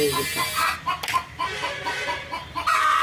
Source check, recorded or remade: recorded